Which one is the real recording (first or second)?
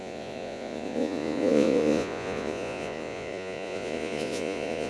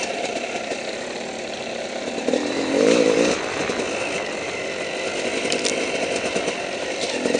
second